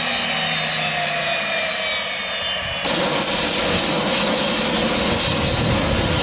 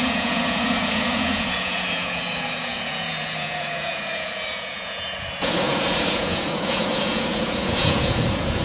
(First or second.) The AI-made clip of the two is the second